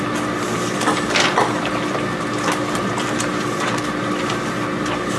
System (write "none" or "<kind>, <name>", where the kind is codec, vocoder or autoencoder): none